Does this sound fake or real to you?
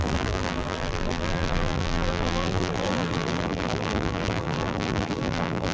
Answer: fake